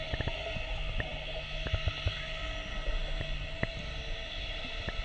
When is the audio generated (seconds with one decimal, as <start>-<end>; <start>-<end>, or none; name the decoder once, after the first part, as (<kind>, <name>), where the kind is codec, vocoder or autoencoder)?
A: none